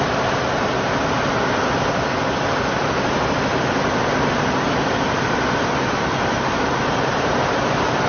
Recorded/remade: recorded